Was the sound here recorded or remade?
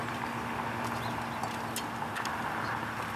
recorded